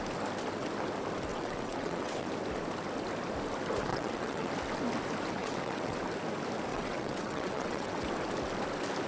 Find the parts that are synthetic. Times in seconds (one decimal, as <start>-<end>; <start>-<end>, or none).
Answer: 1.3-2.3; 3.9-4.5; 5.4-6.0; 6.7-8.1